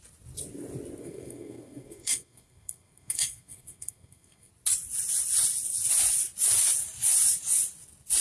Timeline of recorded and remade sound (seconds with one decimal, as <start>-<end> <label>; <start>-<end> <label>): 0.0-1.0 recorded; 1.0-4.5 remade; 4.5-8.2 recorded